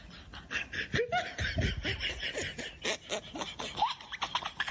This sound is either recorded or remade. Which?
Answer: recorded